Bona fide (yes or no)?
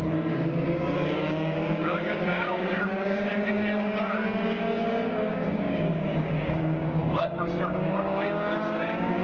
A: no